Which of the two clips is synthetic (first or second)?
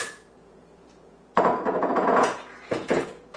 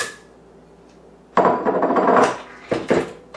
first